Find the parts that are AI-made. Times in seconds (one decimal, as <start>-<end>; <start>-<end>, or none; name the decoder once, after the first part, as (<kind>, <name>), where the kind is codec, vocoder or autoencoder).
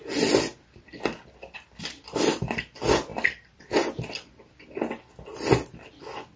none